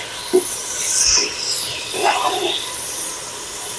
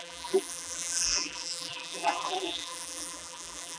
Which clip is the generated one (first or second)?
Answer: second